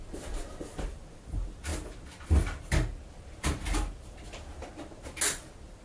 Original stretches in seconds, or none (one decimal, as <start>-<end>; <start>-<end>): 0.0-5.8